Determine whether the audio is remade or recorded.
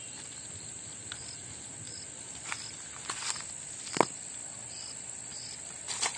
recorded